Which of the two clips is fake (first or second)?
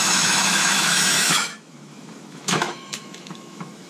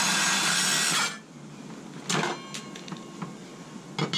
first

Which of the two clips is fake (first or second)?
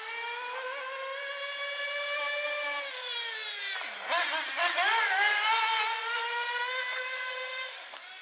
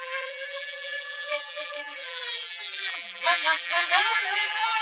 second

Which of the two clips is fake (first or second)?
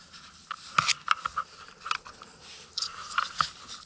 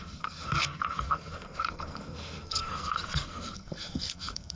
second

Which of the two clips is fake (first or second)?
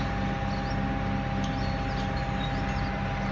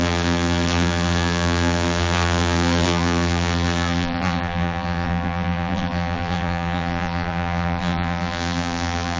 second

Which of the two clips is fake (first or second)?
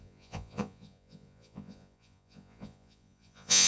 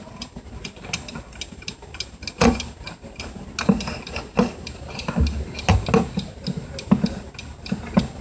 first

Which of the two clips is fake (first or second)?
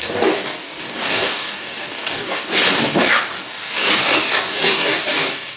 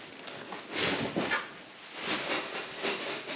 first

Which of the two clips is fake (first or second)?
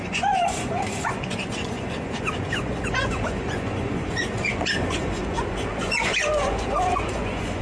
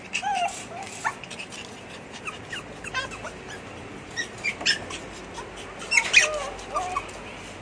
first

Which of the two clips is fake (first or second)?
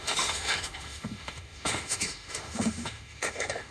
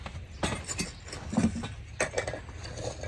first